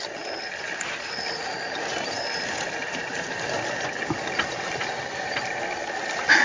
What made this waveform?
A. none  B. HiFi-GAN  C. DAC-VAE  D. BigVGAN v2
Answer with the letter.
A